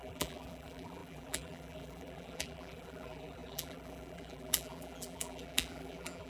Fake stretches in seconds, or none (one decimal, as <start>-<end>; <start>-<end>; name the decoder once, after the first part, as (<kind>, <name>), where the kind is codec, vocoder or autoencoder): 0.0-6.3 (vocoder, BigVGAN v2)